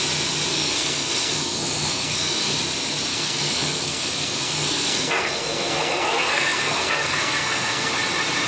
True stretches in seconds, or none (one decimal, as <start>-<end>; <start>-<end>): 0.0-0.5; 2.6-3.1; 7.9-8.5